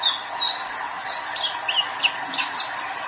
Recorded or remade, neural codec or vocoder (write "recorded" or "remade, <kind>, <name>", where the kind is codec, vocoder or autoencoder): recorded